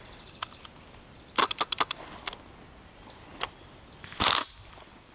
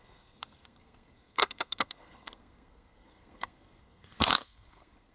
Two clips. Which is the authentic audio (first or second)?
first